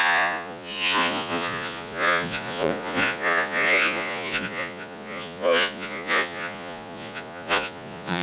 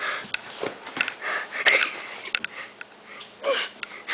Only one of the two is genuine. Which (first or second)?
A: second